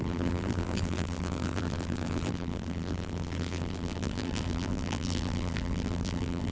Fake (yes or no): yes